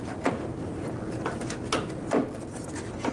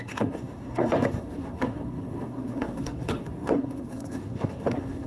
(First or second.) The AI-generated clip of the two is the second